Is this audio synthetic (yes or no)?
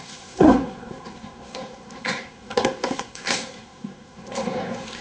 yes